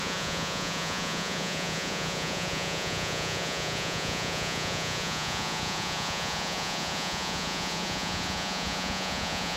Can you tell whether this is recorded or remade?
remade